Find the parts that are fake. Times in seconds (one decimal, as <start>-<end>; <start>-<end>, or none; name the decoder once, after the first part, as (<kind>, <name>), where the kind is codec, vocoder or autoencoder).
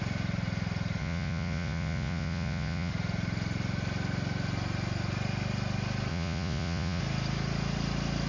1.0-2.9 (vocoder, Vocos); 6.1-7.0